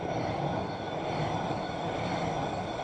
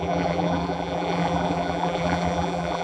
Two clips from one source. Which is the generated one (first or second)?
second